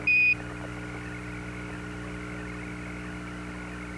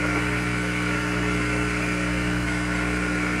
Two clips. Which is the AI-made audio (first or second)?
second